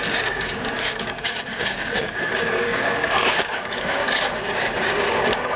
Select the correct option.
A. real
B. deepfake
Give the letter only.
B